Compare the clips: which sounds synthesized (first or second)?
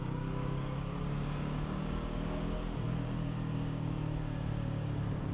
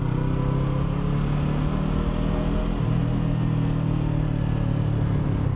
first